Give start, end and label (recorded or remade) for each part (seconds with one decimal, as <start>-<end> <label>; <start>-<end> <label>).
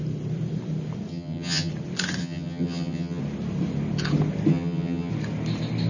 0.0-1.1 recorded; 1.1-1.7 remade; 1.7-2.2 recorded; 2.2-3.2 remade; 3.2-4.5 recorded; 4.5-5.1 remade; 5.1-5.9 recorded